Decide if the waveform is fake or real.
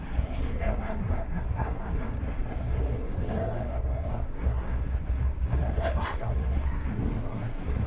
fake